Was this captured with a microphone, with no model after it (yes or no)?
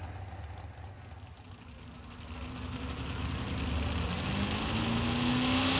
yes